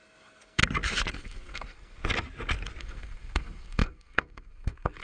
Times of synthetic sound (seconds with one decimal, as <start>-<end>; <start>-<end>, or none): 0.0-0.6; 1.1-2.0; 2.8-5.0